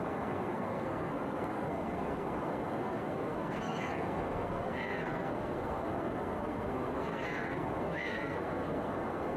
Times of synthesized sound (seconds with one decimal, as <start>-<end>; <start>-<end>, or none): 0.0-9.4

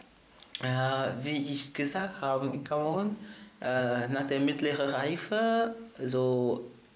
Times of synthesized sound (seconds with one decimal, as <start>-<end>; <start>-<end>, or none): 2.0-3.8

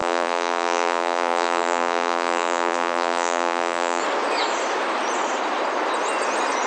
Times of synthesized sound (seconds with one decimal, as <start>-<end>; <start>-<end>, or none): 0.0-4.0

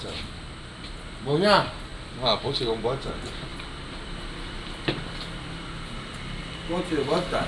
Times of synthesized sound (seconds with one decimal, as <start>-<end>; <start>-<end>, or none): none

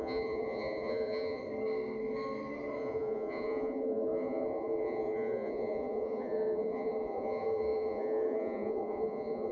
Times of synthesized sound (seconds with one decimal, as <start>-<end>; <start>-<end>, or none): 0.0-1.4; 2.8-9.5